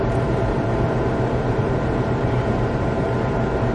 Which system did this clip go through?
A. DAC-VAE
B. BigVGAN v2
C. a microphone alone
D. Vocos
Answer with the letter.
B